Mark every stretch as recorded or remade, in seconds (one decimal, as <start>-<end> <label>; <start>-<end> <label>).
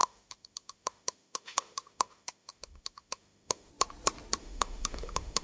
0.0-3.7 remade; 3.7-4.4 recorded; 4.4-5.4 remade